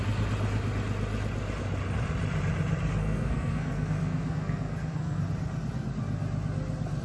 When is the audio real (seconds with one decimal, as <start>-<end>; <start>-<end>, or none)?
0.0-3.0; 5.2-7.0